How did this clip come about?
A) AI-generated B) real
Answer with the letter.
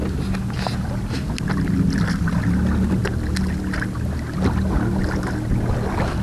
B